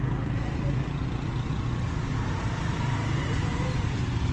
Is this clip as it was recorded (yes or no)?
no